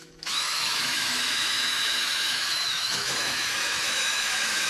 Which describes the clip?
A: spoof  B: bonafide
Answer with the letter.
A